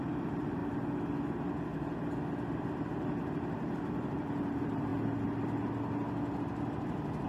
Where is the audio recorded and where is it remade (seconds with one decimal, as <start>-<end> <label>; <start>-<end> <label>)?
0.0-0.6 remade; 0.6-2.5 recorded; 2.5-4.9 remade; 4.9-6.4 recorded; 6.4-7.3 remade